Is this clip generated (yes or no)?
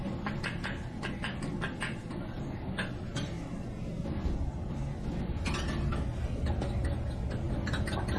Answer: no